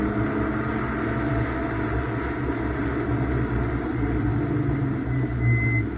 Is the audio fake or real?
real